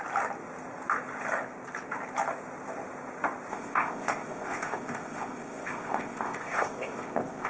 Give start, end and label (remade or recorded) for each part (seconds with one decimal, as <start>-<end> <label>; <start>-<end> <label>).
0.0-3.5 recorded; 3.5-7.5 remade